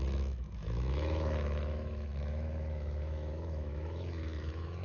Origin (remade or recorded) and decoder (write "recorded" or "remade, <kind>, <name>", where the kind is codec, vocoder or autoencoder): remade, autoencoder, DAC-VAE